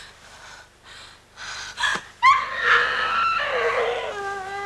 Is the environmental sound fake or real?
real